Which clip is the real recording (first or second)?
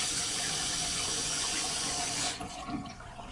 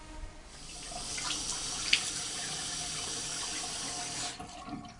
second